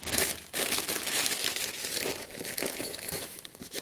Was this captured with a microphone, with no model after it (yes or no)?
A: no